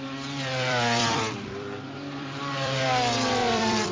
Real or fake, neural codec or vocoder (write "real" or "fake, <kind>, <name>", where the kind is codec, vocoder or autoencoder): fake, vocoder, BigVGAN v2